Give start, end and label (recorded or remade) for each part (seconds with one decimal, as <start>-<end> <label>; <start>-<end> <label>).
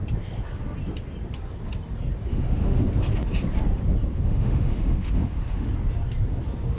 0.0-2.3 recorded; 2.3-2.9 remade; 2.9-4.1 recorded; 4.1-5.7 remade; 5.7-6.8 recorded